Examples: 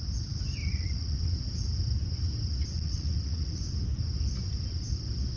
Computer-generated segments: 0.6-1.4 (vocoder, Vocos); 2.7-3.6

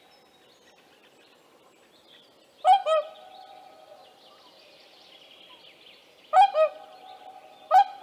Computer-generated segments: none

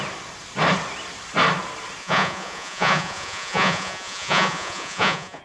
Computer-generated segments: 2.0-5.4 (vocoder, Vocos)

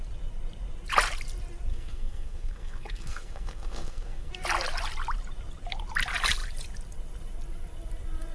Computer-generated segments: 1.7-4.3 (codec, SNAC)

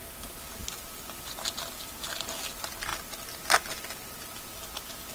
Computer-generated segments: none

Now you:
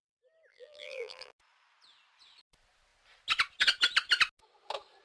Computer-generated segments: 0.5-1.4 (vocoder, BigVGAN v2)

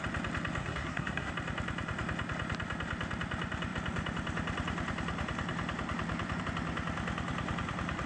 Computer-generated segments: 0.6-1.3 (codec, SNAC)

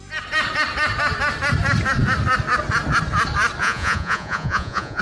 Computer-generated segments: 3.6-5.0 (vocoder, Vocos)